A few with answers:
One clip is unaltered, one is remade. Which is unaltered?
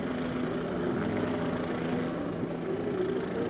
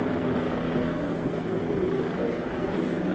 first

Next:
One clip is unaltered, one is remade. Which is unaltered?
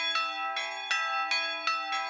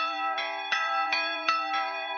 first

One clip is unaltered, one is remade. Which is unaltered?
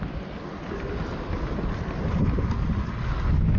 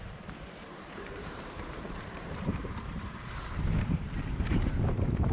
first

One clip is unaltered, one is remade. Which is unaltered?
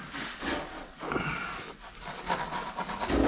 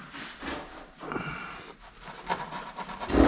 second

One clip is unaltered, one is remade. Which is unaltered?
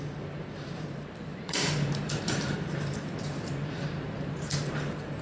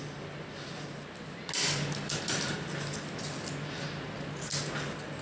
second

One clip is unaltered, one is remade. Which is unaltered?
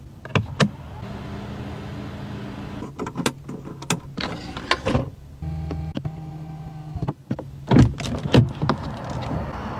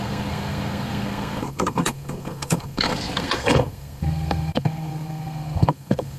first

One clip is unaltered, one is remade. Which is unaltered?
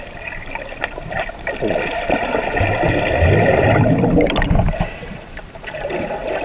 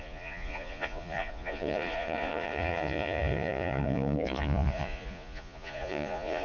first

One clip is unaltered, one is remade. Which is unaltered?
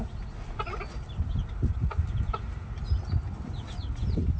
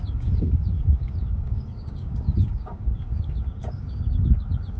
first